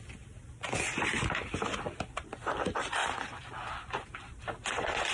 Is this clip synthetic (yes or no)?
no